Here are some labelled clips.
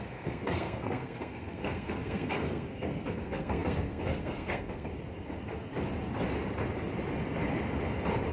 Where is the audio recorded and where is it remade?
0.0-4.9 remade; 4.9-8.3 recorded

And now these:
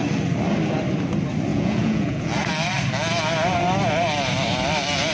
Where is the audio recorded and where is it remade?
0.0-1.5 recorded; 1.5-2.3 remade; 2.3-5.1 recorded